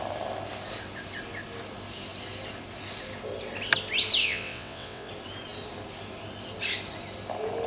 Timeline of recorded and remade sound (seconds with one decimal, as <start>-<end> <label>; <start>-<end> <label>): 0.0-4.2 recorded; 4.2-5.1 remade; 5.1-7.7 recorded